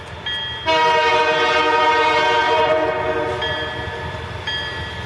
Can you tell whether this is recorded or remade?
recorded